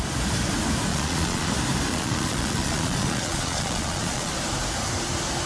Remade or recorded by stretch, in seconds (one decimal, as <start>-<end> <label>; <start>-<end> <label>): 0.0-0.9 recorded; 0.9-1.5 remade; 1.5-1.9 recorded; 1.9-4.3 remade; 4.3-5.5 recorded